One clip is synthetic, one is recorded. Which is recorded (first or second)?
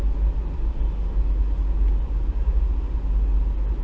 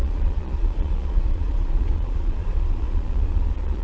first